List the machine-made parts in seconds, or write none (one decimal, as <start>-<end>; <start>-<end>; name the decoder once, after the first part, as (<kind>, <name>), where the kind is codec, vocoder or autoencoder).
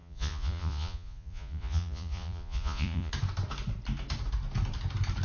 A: 0.0-3.1 (vocoder, Vocos)